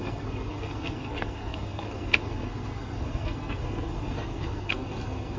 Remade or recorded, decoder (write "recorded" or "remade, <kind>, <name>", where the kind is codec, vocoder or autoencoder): remade, codec, SNAC